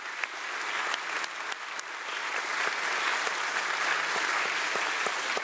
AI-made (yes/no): no